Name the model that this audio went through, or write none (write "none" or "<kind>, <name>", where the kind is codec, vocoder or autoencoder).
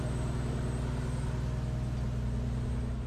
none